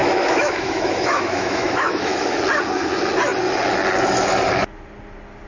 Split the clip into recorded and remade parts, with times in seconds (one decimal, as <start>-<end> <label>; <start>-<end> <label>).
0.0-2.4 remade; 2.4-5.5 recorded